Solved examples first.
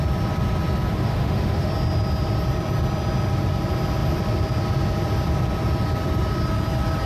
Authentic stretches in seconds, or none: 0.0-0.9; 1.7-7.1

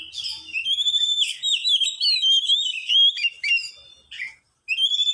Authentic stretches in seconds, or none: 0.0-0.6; 3.7-5.1

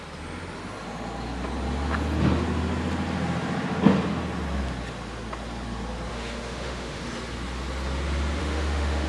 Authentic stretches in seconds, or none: 0.0-6.1; 7.0-8.4

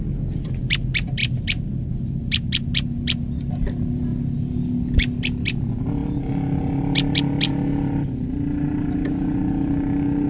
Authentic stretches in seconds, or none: 0.0-10.3

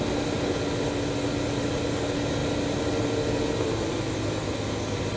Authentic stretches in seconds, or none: 0.0-5.2

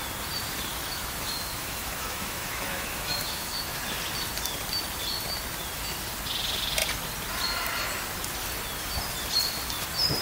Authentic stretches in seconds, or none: 0.0-0.7; 3.8-10.2

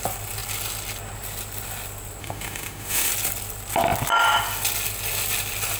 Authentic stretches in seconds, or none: 0.0-2.2; 3.1-5.8

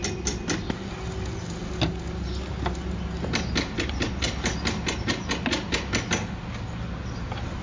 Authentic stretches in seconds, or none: 0.0-7.6